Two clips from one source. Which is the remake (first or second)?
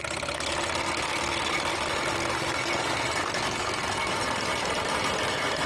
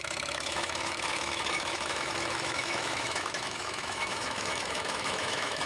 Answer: second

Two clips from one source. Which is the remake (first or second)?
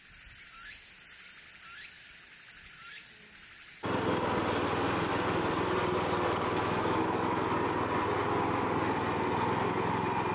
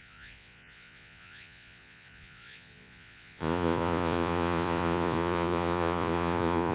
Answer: second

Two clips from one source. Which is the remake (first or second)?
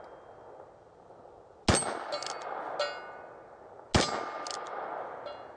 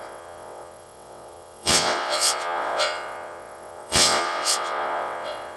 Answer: second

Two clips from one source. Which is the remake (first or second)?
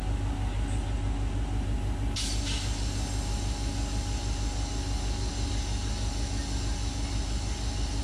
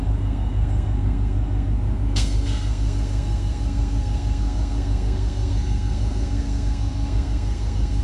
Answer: second